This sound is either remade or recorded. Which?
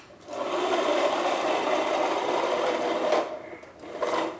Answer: recorded